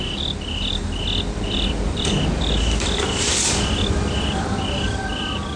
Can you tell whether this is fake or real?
fake